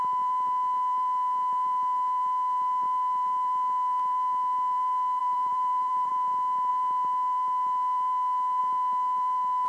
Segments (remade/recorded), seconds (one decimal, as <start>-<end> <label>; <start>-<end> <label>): 0.0-5.2 recorded; 5.2-6.1 remade; 6.1-9.7 recorded